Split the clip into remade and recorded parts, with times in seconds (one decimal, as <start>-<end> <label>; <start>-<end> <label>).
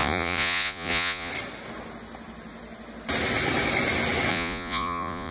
0.0-1.3 remade; 1.3-4.3 recorded; 4.3-5.3 remade